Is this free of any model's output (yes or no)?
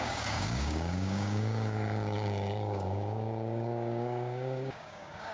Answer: no